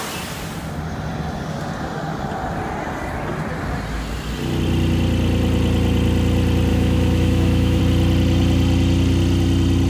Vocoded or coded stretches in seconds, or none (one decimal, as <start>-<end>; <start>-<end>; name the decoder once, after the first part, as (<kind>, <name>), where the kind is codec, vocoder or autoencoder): 6.7-7.8 (autoencoder, DAC-VAE)